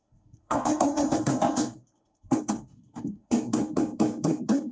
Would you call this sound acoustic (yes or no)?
no